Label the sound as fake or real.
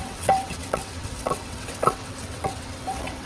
fake